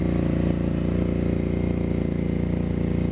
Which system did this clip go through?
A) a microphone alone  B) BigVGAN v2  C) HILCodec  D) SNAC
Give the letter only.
A